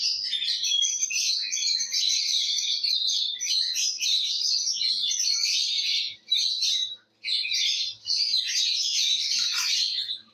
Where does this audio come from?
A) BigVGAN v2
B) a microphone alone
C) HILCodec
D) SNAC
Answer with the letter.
A